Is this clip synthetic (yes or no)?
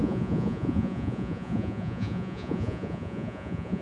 yes